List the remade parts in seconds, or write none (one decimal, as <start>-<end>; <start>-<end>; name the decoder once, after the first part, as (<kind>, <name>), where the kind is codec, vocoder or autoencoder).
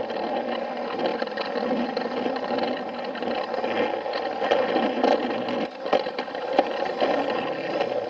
none